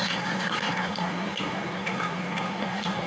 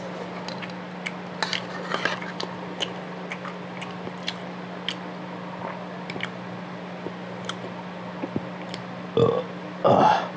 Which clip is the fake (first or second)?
first